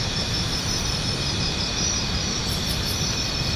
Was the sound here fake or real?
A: real